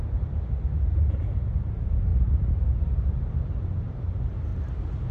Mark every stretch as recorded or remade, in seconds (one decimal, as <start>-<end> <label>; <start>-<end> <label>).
0.0-5.1 recorded